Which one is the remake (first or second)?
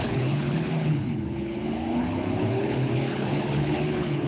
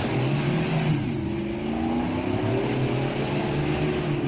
first